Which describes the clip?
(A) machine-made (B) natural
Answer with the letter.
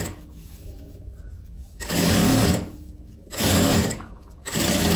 A